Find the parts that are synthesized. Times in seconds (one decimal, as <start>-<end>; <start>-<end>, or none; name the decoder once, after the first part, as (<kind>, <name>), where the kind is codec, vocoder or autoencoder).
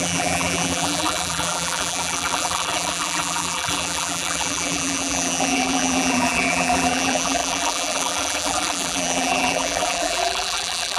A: 0.0-11.0 (vocoder, BigVGAN v2)